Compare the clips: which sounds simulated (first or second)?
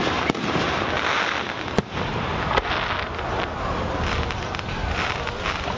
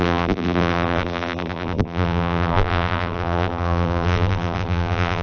second